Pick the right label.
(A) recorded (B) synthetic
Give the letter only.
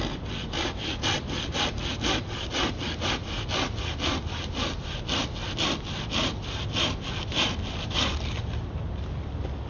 A